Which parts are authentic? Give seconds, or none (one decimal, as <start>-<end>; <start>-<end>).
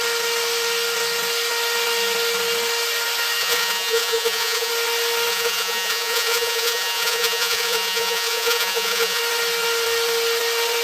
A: 0.0-3.4; 4.7-5.3; 9.2-10.8